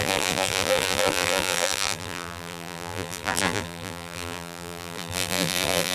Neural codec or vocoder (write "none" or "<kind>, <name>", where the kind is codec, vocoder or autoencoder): vocoder, BigVGAN v2